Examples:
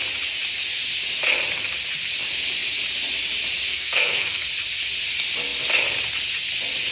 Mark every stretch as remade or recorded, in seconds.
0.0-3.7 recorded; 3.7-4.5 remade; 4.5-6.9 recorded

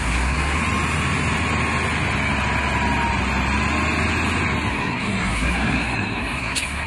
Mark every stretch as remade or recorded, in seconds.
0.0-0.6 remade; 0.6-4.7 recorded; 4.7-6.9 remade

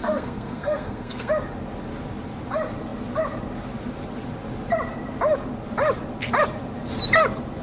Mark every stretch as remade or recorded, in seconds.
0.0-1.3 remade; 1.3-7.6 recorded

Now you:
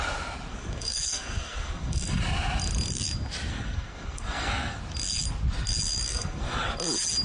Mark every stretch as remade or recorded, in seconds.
0.0-0.5 recorded; 0.5-2.2 remade; 2.2-3.5 recorded; 3.5-4.8 remade; 4.8-6.1 recorded; 6.1-6.7 remade; 6.7-7.2 recorded

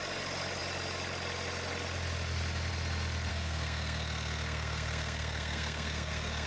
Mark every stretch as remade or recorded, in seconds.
0.0-3.3 recorded; 3.3-6.5 remade

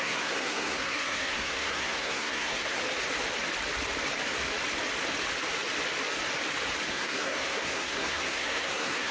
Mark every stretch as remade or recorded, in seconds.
0.0-2.8 remade; 2.8-6.9 recorded; 6.9-9.1 remade

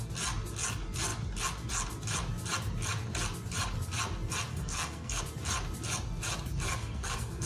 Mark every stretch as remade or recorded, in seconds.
0.0-4.5 recorded; 4.5-5.2 remade; 5.2-6.7 recorded; 6.7-7.5 remade

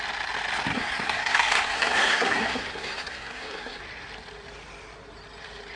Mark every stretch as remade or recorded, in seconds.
0.0-0.7 recorded; 0.7-3.8 remade; 3.8-5.8 recorded